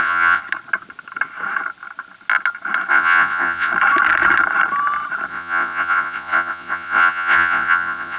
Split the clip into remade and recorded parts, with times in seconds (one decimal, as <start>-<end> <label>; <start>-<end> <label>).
0.0-0.4 remade; 0.4-2.9 recorded; 2.9-3.7 remade; 3.7-5.3 recorded; 5.3-8.2 remade